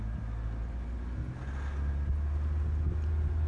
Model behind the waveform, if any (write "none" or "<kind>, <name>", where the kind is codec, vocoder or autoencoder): none